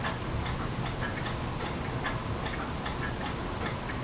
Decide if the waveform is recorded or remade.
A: recorded